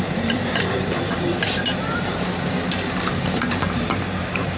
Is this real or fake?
fake